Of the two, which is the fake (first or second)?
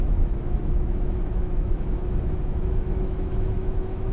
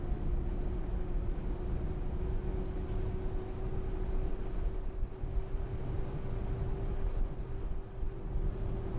first